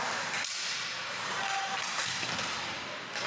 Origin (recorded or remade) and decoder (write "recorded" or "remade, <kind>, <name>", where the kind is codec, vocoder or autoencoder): remade, vocoder, BigVGAN v2